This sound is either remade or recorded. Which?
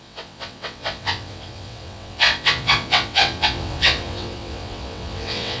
remade